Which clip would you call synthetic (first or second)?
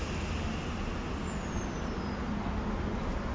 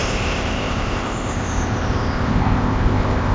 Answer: second